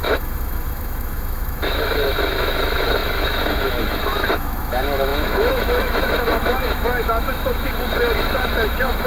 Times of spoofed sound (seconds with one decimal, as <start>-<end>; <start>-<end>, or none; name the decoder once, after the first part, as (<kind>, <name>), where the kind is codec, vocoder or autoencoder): 0.0-9.1 (autoencoder, DAC-VAE)